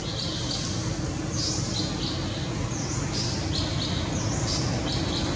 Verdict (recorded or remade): recorded